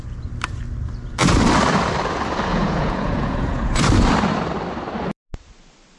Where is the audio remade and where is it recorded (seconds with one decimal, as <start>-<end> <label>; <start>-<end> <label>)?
0.0-2.5 recorded; 2.5-3.8 remade; 3.8-6.0 recorded